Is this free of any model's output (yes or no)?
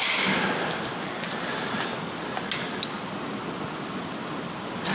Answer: yes